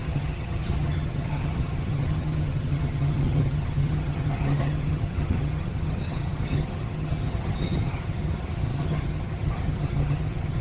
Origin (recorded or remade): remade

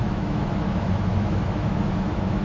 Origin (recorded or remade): remade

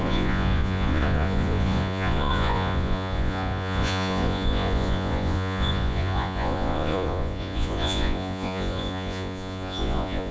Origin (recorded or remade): remade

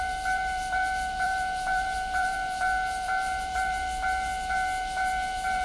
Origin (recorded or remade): remade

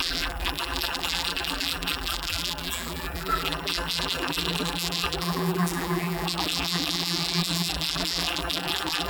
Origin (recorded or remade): remade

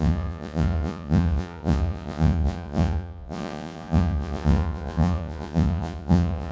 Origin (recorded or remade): remade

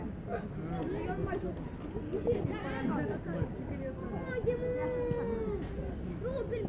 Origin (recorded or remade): recorded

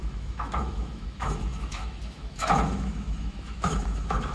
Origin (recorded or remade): remade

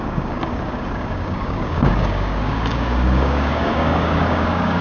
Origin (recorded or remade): remade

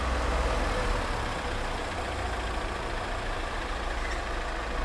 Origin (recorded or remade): recorded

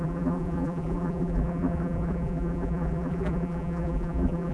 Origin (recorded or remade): remade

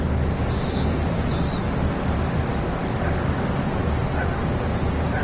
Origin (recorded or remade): recorded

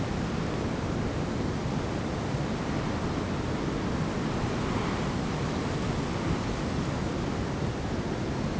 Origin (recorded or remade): recorded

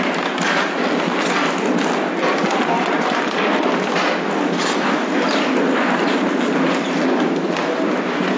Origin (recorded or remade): recorded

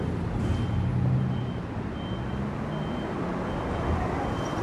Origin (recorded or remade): recorded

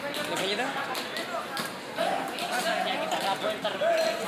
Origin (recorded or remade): recorded